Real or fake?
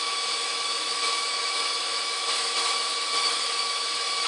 fake